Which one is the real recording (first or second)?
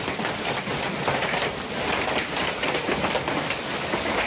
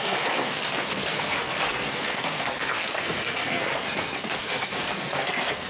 first